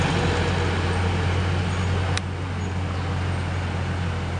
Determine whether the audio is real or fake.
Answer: real